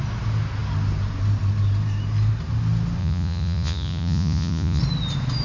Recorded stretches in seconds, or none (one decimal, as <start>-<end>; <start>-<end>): 0.0-3.0; 4.8-5.4